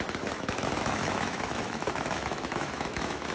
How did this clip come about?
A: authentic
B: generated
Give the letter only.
B